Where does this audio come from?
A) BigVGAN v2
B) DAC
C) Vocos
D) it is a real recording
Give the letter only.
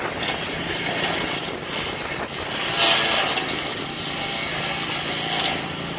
D